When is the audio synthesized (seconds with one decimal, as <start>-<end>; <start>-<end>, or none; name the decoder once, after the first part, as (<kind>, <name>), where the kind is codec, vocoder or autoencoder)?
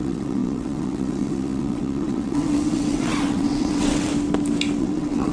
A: 0.0-4.1 (vocoder, WaveNeXt); 4.8-5.3